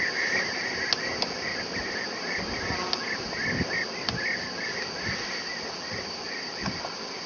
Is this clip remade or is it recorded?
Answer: recorded